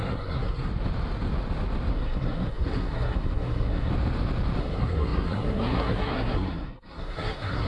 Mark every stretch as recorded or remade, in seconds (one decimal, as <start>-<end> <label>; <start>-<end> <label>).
0.0-0.7 remade; 0.7-1.9 recorded; 1.9-3.9 remade; 3.9-4.6 recorded; 4.6-7.7 remade